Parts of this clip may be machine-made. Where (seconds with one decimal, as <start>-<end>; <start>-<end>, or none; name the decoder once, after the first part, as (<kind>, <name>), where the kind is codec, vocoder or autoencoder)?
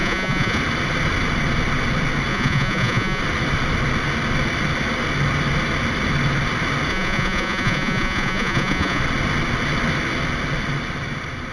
0.0-0.6 (vocoder, Vocos); 2.3-3.2; 6.9-9.0